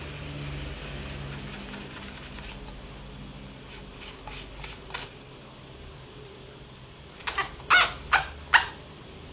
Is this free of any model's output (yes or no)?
yes